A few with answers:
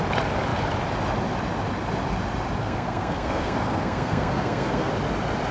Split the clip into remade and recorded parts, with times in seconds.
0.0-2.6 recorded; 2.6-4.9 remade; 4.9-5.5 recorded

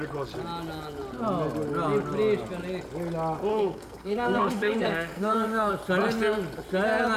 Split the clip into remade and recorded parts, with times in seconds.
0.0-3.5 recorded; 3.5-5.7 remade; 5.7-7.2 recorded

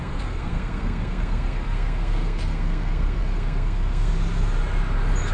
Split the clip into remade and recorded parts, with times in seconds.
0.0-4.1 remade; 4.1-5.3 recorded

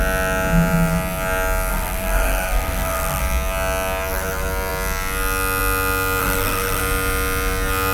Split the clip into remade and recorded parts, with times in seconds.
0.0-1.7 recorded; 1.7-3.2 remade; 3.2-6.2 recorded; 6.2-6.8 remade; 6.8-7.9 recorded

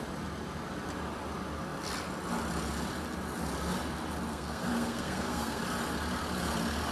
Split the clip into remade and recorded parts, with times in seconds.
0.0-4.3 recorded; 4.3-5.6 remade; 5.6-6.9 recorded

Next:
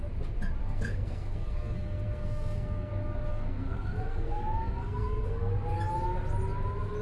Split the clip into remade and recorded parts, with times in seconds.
0.0-0.6 recorded; 0.6-2.9 remade; 2.9-3.3 recorded; 3.3-5.5 remade; 5.5-7.0 recorded